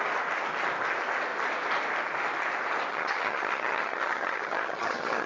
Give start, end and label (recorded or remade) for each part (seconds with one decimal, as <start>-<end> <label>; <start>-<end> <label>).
0.0-2.9 recorded; 2.9-5.3 remade